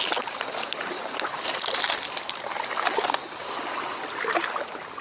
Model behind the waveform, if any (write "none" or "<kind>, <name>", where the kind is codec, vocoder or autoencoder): none